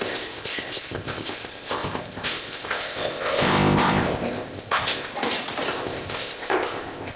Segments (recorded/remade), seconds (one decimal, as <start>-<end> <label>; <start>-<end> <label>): 0.0-5.1 remade; 5.1-5.7 recorded; 5.7-7.2 remade